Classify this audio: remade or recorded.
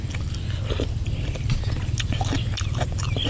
recorded